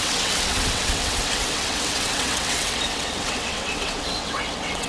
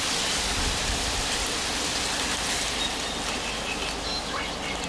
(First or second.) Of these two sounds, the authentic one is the second